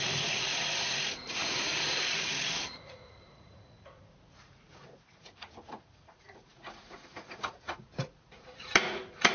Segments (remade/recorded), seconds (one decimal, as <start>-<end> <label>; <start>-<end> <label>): 0.0-9.3 remade